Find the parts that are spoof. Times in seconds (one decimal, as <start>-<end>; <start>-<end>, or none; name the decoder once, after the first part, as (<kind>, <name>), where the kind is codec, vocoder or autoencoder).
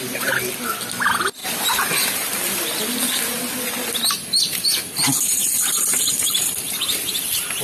none